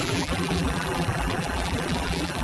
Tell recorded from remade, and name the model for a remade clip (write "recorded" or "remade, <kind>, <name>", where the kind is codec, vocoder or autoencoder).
remade, vocoder, BigVGAN v2